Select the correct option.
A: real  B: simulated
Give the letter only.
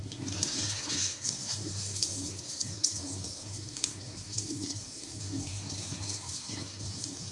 B